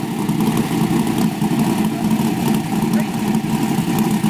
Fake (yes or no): no